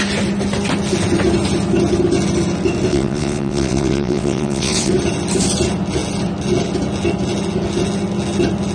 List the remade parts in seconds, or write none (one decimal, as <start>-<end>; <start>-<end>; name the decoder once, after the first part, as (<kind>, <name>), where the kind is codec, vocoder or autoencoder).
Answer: 2.9-4.9 (vocoder, WaveNeXt)

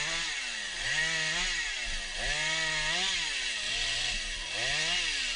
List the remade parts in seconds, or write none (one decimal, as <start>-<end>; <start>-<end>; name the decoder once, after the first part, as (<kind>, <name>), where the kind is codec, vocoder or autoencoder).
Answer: none

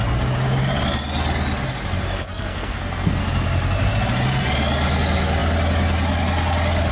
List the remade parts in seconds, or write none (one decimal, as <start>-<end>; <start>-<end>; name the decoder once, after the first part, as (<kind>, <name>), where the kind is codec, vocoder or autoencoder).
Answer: 2.3-3.2 (codec, SNAC)

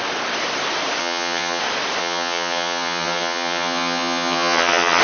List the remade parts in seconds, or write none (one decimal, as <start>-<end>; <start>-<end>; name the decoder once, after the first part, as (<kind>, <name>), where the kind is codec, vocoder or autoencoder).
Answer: 1.0-1.6 (vocoder, HiFi-GAN); 2.0-5.0

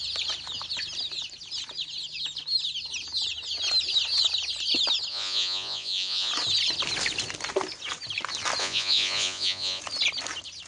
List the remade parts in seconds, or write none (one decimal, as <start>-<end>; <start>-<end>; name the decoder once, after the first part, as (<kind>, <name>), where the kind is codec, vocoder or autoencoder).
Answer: 5.1-6.3 (vocoder, Vocos); 8.6-9.8

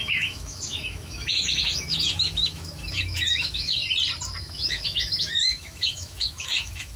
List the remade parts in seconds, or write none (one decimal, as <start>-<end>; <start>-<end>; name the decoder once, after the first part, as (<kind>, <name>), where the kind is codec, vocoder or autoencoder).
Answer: 0.0-3.8 (autoencoder, DAC-VAE); 4.4-7.0

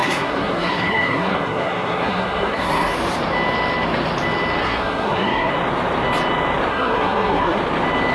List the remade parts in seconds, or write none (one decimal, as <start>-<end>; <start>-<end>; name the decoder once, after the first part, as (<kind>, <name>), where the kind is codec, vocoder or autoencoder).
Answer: 0.0-2.9 (codec, SNAC); 4.6-5.5; 6.7-7.6